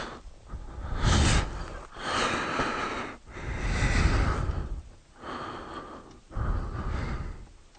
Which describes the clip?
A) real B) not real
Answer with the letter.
A